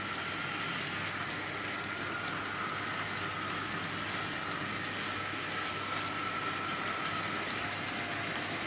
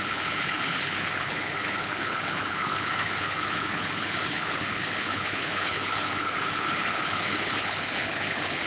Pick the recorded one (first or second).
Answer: first